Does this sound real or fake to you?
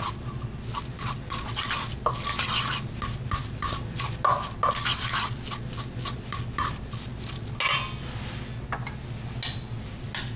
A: real